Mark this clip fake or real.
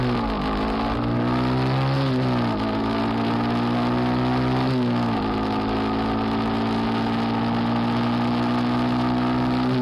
real